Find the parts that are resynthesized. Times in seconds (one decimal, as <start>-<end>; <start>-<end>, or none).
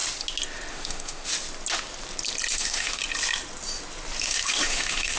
0.7-1.3; 2.5-3.0; 4.2-5.2